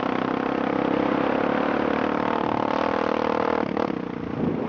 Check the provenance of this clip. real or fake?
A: real